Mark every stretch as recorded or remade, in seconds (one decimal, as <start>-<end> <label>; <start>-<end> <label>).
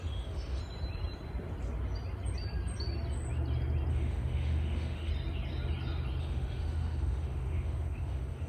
0.0-0.6 remade; 0.6-3.9 recorded; 3.9-5.1 remade; 5.1-6.2 recorded; 6.2-8.5 remade